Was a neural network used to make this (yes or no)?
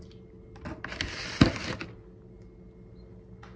no